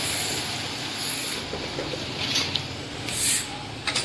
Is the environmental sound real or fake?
real